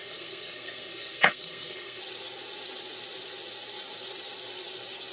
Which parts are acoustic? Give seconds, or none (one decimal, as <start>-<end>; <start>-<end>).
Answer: 2.0-5.1